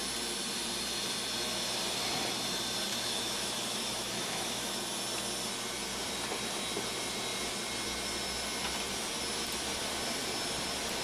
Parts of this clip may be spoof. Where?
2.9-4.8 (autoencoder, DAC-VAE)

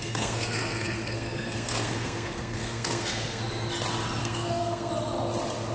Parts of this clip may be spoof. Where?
0.0-3.4 (codec, SNAC); 4.2-4.9

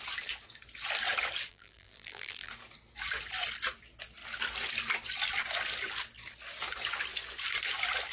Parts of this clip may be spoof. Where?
1.5-2.5 (vocoder, BigVGAN v2)

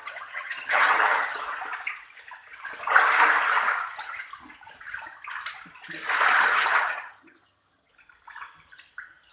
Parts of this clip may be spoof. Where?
0.0-1.4 (vocoder, HiFi-GAN); 6.5-7.9

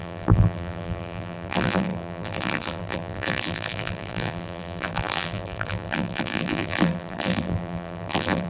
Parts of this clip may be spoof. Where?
0.0-8.5 (vocoder, BigVGAN v2)

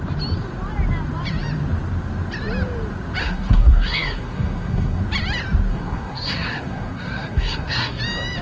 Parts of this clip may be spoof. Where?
3.2-5.0 (codec, SNAC); 5.7-8.0